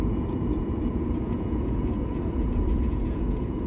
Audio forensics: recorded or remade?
remade